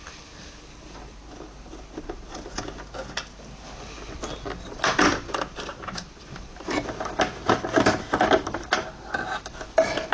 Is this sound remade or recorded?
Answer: recorded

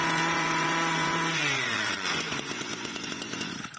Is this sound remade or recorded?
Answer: remade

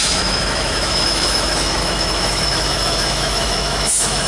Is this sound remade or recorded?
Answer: remade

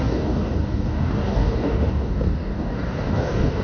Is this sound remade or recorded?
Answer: remade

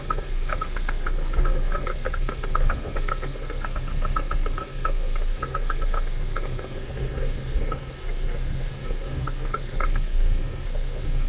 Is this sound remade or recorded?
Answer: remade